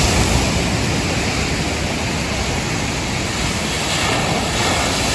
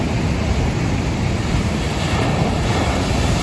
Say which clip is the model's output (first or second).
second